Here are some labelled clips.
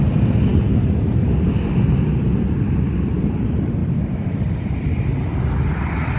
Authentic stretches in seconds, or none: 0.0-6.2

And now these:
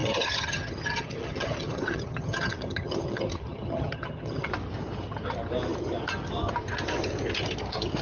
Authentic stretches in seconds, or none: 4.5-8.0

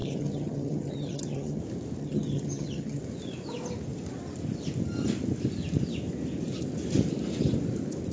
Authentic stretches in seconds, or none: 1.6-2.0; 3.0-8.1

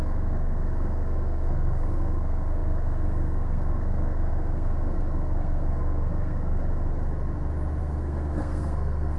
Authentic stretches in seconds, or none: 6.6-7.8